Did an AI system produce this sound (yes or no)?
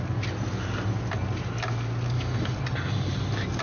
no